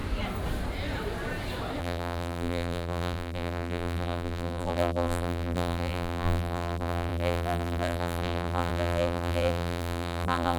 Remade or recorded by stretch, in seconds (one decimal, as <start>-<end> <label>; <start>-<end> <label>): 0.0-1.8 recorded; 1.8-10.6 remade